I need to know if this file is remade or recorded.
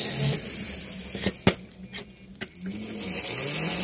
recorded